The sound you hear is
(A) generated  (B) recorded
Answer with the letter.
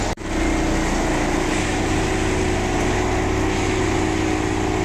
B